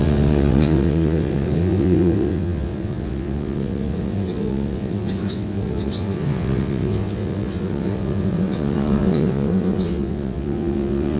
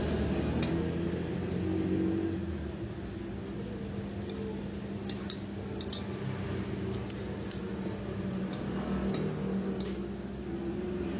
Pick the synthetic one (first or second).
first